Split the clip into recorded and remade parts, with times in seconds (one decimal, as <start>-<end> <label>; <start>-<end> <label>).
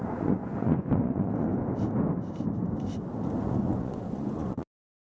0.0-1.5 remade; 1.5-3.3 recorded; 3.3-5.0 remade